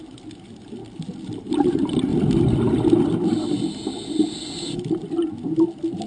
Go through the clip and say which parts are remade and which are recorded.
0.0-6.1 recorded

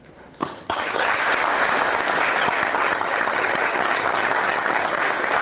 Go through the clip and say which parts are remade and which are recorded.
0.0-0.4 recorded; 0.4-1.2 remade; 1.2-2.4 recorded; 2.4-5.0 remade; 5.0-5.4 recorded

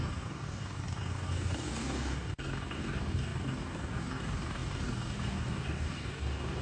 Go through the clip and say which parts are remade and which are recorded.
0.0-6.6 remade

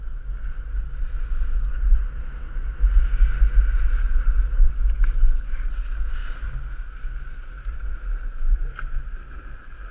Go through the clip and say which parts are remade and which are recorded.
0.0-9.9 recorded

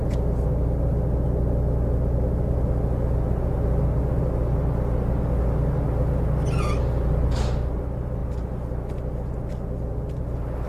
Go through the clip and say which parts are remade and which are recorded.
0.0-10.7 recorded